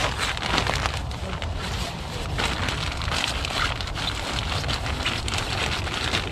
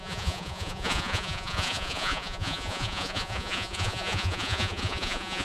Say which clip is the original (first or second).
first